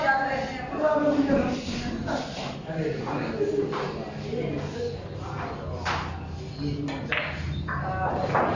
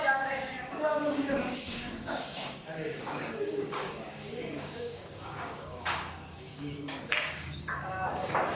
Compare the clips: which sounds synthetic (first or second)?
second